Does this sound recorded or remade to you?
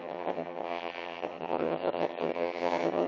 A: remade